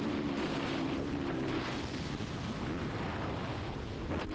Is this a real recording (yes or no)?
yes